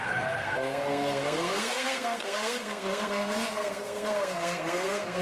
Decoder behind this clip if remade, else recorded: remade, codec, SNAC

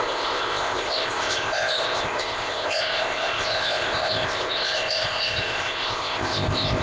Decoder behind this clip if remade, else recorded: remade, codec, ZipCodec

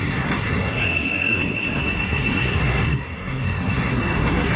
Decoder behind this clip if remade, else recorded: remade, codec, SNAC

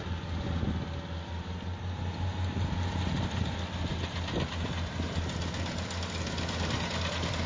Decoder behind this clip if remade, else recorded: recorded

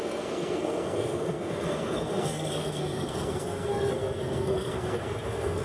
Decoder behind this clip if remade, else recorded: remade, codec, SNAC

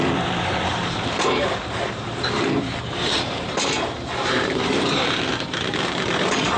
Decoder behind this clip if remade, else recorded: remade, vocoder, BigVGAN v2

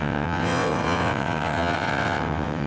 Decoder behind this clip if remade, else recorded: remade, vocoder, WaveNeXt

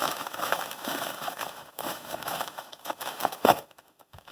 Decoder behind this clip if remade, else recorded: remade, autoencoder, DAC-VAE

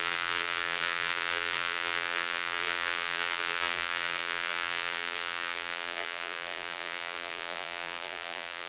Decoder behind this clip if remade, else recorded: remade, vocoder, BigVGAN v2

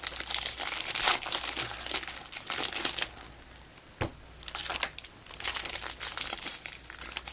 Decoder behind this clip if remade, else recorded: recorded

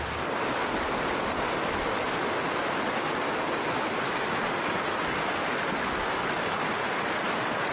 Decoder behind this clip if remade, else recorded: recorded